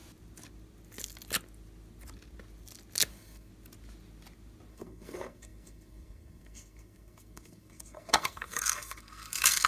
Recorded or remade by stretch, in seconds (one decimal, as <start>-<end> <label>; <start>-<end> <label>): 0.0-3.1 recorded; 3.1-3.5 remade; 3.5-4.7 recorded; 4.7-9.7 remade